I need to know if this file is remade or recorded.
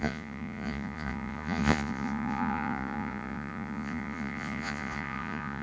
remade